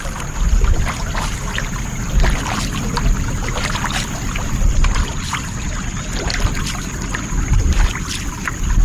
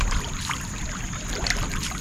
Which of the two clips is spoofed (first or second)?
second